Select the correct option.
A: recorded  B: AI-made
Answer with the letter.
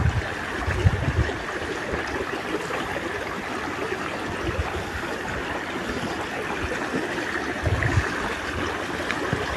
A